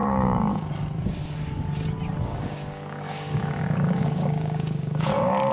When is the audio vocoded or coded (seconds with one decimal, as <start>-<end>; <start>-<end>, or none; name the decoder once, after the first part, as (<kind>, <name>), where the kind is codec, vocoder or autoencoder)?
0.0-0.7 (codec, DAC); 2.3-5.5